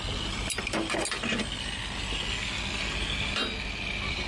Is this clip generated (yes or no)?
no